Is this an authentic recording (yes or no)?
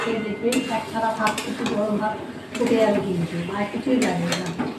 yes